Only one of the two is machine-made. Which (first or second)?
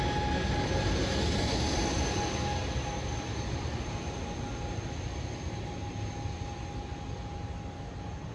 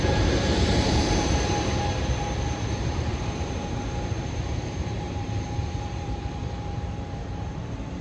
second